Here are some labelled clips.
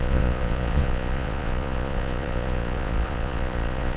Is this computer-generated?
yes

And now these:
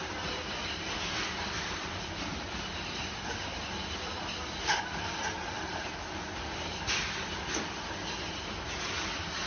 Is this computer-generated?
no